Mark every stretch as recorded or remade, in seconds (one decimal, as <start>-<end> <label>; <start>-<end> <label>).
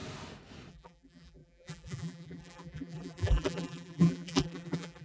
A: 0.0-0.7 recorded; 0.7-5.0 remade